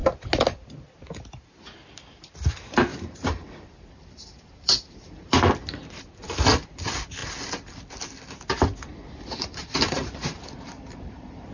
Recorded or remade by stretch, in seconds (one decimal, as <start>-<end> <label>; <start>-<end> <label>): 0.0-2.9 recorded; 2.9-5.5 remade; 5.5-8.9 recorded; 8.9-11.5 remade